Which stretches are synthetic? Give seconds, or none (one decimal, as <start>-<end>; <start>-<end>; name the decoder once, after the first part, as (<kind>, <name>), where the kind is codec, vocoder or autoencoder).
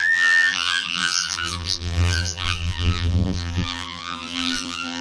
0.0-5.0 (vocoder, BigVGAN v2)